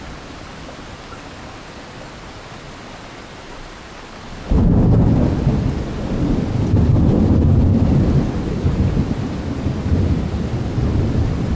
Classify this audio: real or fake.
real